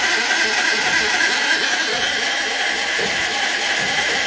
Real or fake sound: real